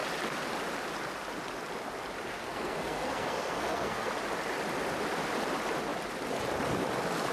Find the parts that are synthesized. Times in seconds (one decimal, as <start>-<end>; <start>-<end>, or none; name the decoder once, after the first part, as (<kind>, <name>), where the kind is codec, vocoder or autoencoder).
2.3-4.1 (codec, SNAC)